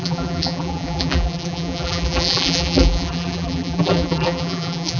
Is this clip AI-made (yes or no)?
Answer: yes